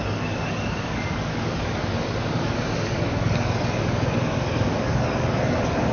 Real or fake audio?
fake